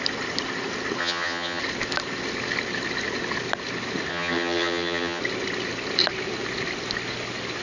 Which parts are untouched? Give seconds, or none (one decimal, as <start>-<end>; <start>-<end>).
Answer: 0.0-1.0; 1.6-4.1; 5.2-7.6